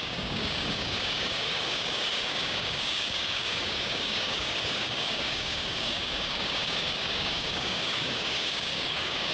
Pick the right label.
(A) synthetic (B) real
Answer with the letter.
A